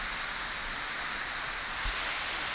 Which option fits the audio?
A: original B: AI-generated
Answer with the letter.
A